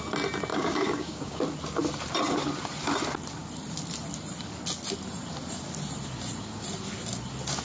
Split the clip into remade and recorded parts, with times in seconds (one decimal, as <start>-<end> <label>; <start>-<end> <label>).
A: 0.0-0.5 recorded; 0.5-1.4 remade; 1.4-7.6 recorded